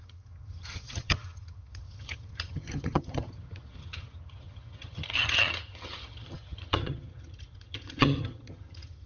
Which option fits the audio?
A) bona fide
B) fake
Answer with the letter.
B